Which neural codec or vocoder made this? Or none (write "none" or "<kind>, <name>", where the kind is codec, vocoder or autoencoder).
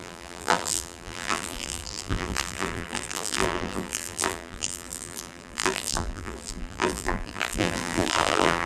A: vocoder, BigVGAN v2